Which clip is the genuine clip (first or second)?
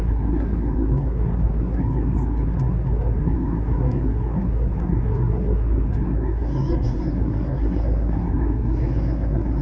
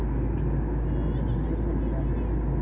second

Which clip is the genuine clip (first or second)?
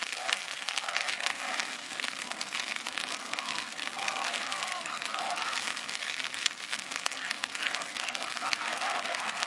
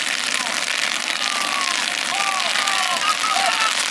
second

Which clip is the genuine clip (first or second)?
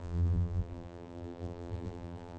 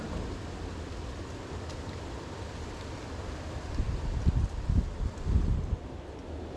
second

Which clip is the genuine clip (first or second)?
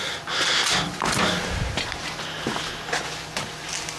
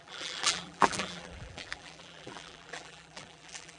first